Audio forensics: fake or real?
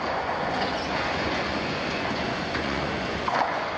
fake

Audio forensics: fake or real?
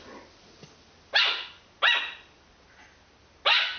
real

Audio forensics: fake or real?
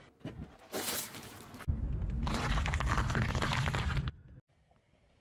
real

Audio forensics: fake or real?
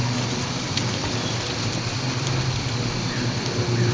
real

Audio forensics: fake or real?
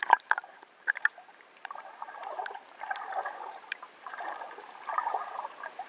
fake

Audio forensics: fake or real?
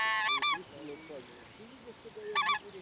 real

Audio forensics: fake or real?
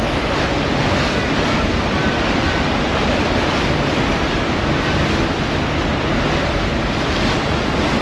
real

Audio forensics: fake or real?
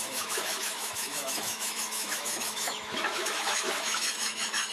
fake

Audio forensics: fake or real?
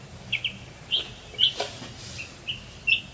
real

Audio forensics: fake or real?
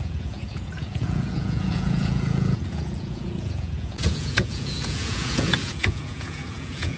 fake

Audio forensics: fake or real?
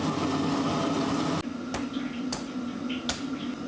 real